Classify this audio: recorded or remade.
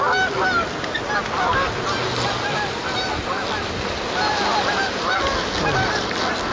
recorded